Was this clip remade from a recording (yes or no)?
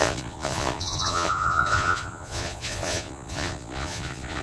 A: yes